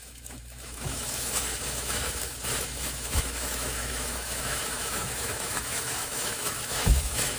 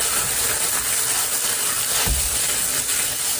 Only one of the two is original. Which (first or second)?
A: second